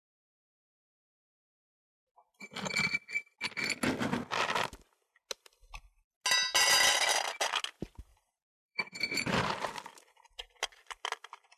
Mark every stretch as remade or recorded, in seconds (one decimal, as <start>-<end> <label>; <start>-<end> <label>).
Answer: 0.0-8.1 recorded; 8.1-9.5 remade; 9.5-11.6 recorded